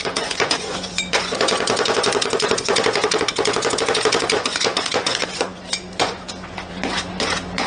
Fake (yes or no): yes